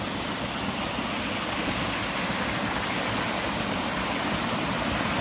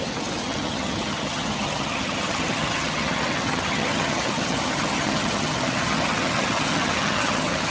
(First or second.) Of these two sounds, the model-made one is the second